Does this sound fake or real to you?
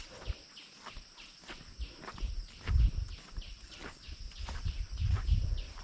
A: real